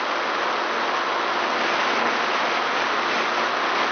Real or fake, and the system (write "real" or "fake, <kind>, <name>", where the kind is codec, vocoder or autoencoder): real